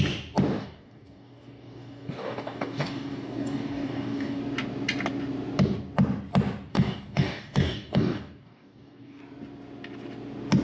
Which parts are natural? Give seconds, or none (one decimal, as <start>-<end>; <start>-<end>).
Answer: 0.0-0.6; 4.4-6.7; 9.2-10.6